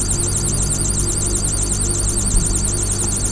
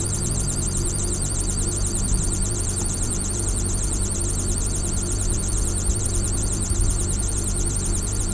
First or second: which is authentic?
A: first